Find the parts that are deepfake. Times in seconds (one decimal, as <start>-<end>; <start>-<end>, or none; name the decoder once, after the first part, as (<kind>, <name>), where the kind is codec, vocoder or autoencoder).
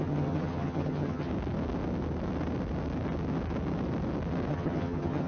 0.0-1.3 (vocoder, HiFi-GAN); 4.5-5.3